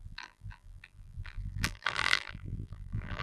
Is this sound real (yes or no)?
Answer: no